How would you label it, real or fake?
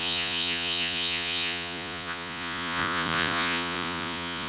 fake